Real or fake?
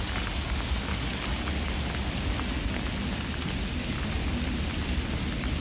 real